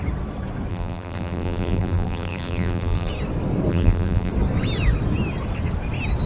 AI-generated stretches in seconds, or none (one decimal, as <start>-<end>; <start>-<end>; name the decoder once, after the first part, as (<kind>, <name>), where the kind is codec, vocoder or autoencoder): 0.7-3.1 (vocoder, BigVGAN v2); 3.7-4.3